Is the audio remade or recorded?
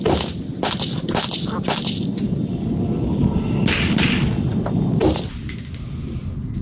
recorded